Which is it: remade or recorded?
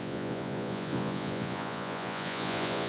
remade